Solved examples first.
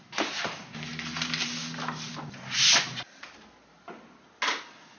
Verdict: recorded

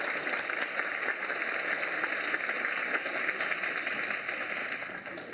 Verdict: recorded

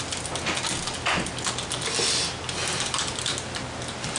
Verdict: recorded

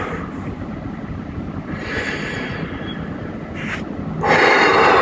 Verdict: recorded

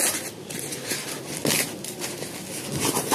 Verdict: recorded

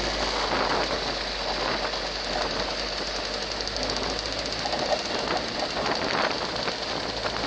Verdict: recorded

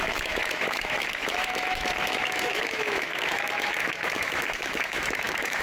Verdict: remade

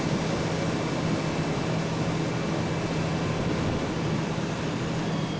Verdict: recorded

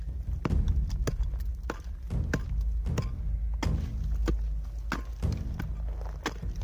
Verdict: recorded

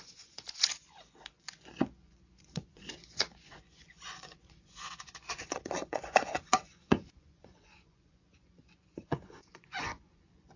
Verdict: remade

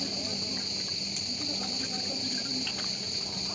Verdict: recorded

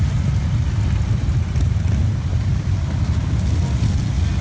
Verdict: recorded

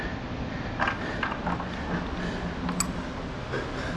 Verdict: recorded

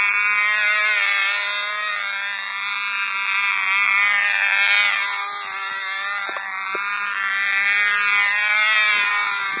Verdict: recorded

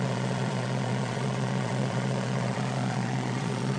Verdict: remade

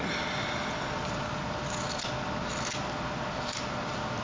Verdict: recorded